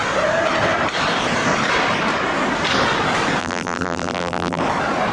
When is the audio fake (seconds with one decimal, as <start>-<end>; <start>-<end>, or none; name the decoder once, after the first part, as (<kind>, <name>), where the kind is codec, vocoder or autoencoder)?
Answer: 3.4-4.6 (vocoder, BigVGAN v2)